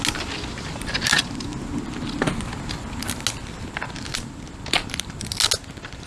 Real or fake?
real